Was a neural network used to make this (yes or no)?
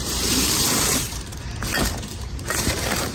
yes